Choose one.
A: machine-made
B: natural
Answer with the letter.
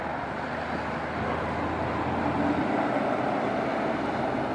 B